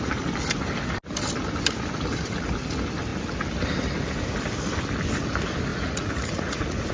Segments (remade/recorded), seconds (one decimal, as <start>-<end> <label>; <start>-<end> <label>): 0.0-5.7 recorded; 5.7-6.9 remade